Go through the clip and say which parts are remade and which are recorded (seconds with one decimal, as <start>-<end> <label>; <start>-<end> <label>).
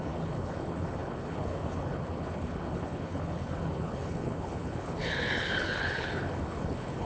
0.0-7.1 remade